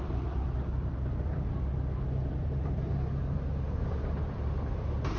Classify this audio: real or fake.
fake